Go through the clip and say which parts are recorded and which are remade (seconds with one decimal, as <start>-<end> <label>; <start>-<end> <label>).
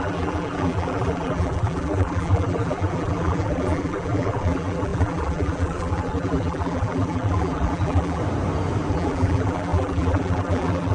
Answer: 0.0-8.2 remade; 8.2-8.9 recorded; 8.9-10.9 remade